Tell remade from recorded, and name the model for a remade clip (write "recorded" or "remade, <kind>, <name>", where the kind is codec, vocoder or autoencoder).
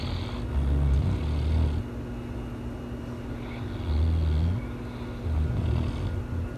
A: recorded